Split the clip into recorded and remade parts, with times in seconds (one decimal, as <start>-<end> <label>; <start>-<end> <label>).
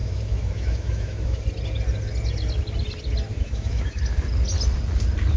0.0-1.4 remade; 1.4-3.3 recorded; 3.3-4.0 remade; 4.0-5.4 recorded